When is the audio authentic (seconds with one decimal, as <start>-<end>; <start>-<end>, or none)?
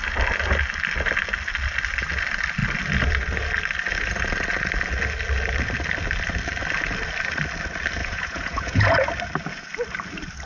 0.0-8.0; 9.1-10.4